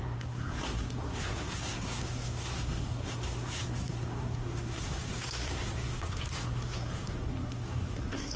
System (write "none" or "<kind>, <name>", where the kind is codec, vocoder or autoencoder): codec, SNAC